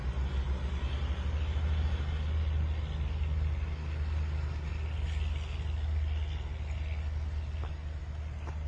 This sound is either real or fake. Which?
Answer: real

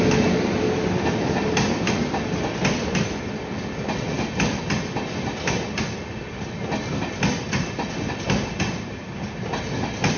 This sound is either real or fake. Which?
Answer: real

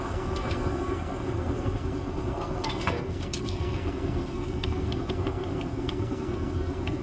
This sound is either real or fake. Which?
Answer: fake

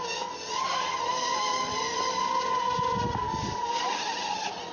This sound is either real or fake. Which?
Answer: real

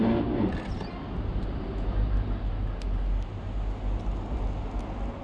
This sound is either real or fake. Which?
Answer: real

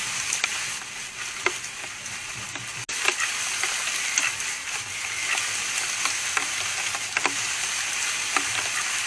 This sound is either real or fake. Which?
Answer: real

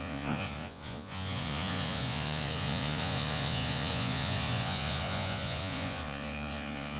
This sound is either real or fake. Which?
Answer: fake